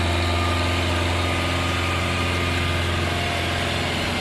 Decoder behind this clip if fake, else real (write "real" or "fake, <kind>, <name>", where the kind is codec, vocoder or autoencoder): real